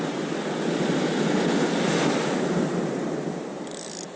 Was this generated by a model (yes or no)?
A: no